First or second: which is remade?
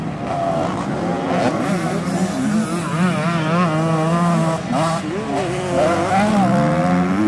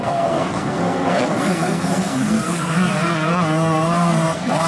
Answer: second